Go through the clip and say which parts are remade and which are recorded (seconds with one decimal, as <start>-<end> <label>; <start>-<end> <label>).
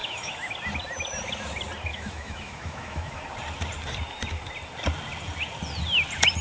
0.0-0.5 remade; 0.5-1.9 recorded; 1.9-3.2 remade; 3.2-6.4 recorded